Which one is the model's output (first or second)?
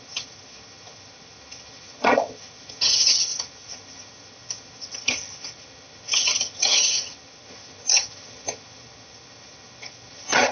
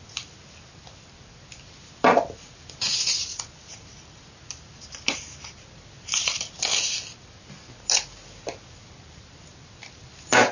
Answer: first